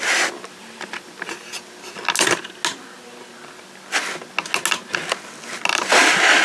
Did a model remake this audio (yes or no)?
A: no